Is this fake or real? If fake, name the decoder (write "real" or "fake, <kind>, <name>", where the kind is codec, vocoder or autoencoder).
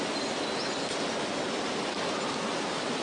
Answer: real